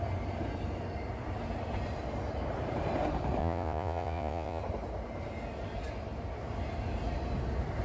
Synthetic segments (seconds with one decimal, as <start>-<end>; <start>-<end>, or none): 3.4-4.6